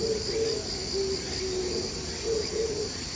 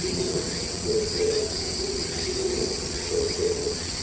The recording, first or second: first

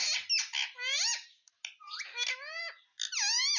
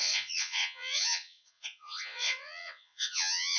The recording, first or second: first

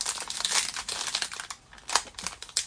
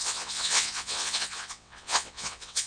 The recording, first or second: first